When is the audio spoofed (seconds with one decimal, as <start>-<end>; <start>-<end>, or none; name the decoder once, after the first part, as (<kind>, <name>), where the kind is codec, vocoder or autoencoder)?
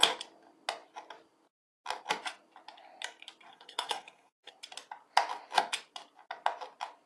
3.5-4.5 (codec, SNAC)